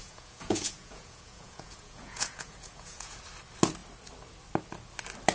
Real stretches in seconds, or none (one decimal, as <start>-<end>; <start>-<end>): 3.2-5.3